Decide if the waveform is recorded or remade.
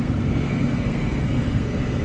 remade